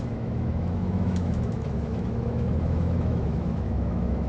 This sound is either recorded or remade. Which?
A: remade